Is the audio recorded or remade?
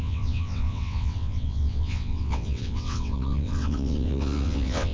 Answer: remade